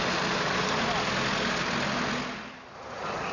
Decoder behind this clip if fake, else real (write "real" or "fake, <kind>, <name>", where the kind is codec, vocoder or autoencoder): real